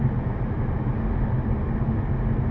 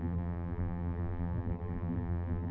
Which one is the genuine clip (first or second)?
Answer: first